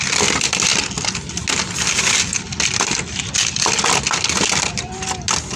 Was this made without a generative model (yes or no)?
yes